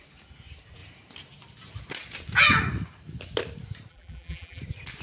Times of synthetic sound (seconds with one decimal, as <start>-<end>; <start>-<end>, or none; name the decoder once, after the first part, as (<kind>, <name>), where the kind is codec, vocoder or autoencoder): 3.9-4.6 (vocoder, BigVGAN v2)